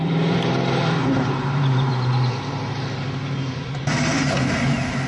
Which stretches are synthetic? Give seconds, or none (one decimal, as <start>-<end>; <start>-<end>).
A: 0.0-1.9; 4.2-5.1